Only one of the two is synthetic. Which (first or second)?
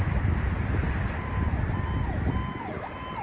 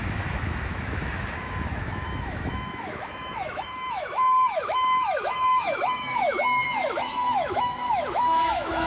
second